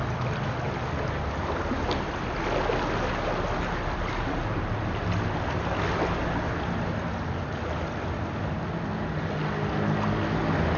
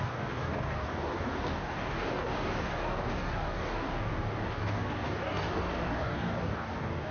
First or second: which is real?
first